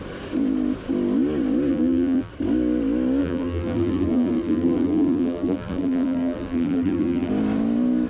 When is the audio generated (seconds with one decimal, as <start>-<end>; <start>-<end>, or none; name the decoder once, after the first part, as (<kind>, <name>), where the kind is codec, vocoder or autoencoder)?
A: 1.7-2.3 (vocoder, BigVGAN v2); 3.2-7.3